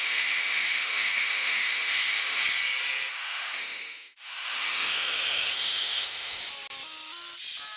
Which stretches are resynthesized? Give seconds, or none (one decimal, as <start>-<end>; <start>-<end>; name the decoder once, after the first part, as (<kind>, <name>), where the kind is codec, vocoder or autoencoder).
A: 0.0-2.4 (autoencoder, DAC-VAE); 3.1-6.4